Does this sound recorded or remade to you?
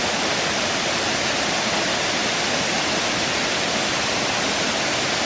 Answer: recorded